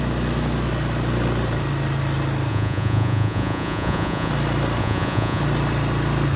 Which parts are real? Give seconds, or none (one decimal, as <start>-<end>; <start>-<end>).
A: 0.0-2.5; 4.3-4.8; 5.4-6.4